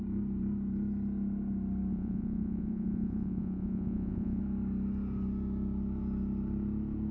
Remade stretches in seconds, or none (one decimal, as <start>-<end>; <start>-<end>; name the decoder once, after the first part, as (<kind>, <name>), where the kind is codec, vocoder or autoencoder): 1.9-4.4 (vocoder, Vocos)